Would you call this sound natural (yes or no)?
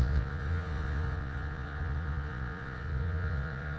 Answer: no